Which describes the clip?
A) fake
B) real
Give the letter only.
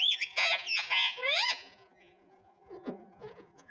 A